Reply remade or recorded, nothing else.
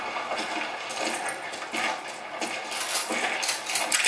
recorded